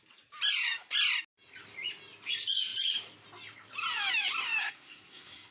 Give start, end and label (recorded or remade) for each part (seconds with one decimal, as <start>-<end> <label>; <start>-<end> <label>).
0.0-4.6 recorded; 4.6-5.5 remade

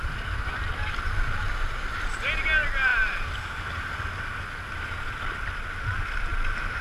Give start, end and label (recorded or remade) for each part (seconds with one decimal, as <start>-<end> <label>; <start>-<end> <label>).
0.0-6.8 recorded

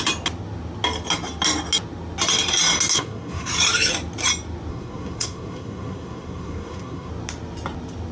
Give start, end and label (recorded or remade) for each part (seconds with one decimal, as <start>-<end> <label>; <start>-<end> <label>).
0.0-2.9 recorded; 2.9-3.5 remade; 3.5-4.7 recorded; 4.7-7.1 remade; 7.1-8.1 recorded